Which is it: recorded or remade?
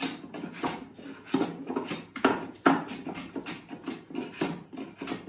recorded